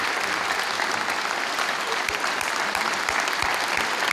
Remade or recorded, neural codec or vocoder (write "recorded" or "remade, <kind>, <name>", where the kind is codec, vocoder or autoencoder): recorded